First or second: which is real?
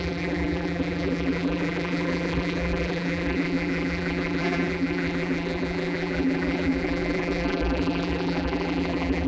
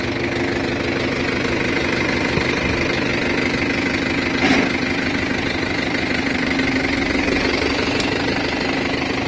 second